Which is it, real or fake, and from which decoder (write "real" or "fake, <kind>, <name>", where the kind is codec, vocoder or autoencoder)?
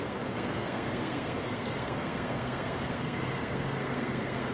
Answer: fake, codec, SNAC